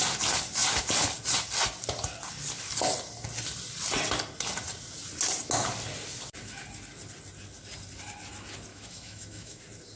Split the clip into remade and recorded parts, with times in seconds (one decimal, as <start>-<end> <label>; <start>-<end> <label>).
0.0-8.7 recorded; 8.7-9.6 remade; 9.6-10.0 recorded